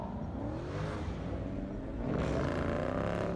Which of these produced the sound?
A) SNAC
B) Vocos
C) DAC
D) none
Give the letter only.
D